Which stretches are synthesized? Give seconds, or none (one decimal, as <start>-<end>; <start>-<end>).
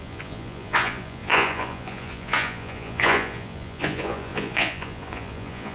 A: 0.0-5.7